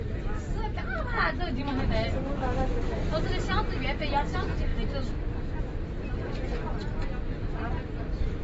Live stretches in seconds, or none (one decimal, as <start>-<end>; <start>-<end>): 0.0-8.4